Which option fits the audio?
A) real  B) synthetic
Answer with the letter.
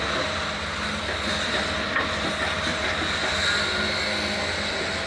A